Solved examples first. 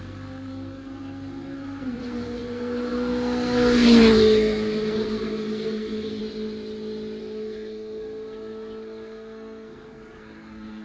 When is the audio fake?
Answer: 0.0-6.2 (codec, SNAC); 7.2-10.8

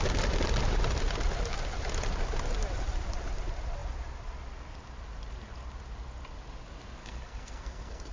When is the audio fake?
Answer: 7.0-8.1 (codec, SNAC)

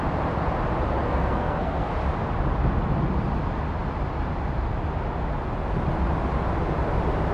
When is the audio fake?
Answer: 1.0-1.9 (codec, SNAC)

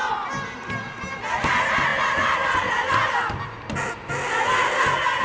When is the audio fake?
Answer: none

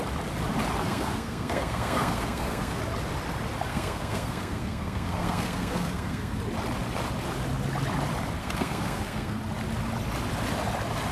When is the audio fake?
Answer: 0.8-2.8 (codec, SNAC); 3.7-6.4; 8.4-9.4